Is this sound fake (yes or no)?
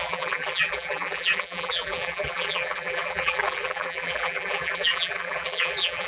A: yes